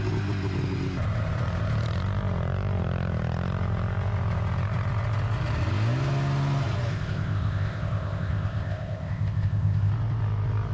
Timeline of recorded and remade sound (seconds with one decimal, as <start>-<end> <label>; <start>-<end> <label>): 0.0-6.9 recorded; 6.9-9.9 remade; 9.9-10.7 recorded